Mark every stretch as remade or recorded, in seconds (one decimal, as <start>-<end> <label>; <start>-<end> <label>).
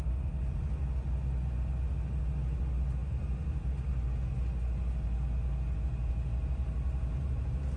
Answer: 0.0-7.8 recorded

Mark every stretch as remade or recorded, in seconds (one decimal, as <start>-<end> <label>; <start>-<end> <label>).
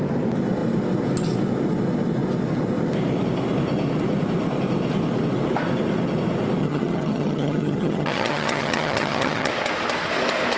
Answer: 0.0-6.6 recorded; 6.6-9.5 remade; 9.5-10.6 recorded